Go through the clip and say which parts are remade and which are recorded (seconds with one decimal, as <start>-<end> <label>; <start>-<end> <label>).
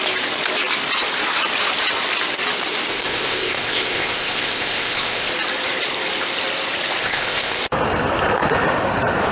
0.0-2.9 recorded; 2.9-5.3 remade; 5.3-7.0 recorded; 7.0-7.6 remade; 7.6-9.3 recorded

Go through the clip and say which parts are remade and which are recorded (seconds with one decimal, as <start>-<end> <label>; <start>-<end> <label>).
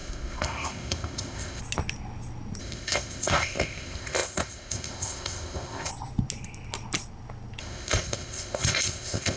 0.0-1.6 remade; 1.6-2.6 recorded; 2.6-5.9 remade; 5.9-7.6 recorded; 7.6-9.4 remade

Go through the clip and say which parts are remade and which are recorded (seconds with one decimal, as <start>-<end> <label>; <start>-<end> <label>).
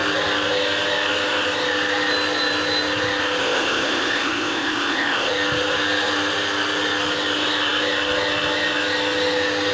0.0-3.4 recorded; 3.4-5.3 remade; 5.3-9.7 recorded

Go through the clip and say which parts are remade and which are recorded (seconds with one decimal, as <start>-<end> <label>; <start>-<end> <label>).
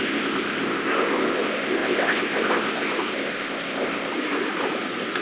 0.0-4.1 remade; 4.1-5.2 recorded